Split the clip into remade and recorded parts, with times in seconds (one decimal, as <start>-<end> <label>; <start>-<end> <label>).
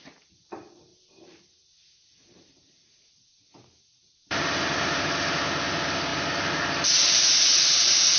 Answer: 0.0-8.2 remade